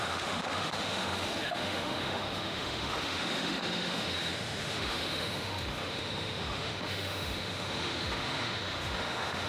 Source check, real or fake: fake